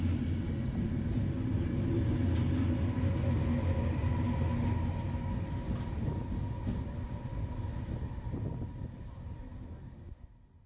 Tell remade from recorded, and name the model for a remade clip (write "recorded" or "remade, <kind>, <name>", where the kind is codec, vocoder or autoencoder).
recorded